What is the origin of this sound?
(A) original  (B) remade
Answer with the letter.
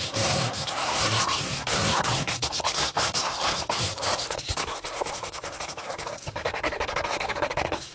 B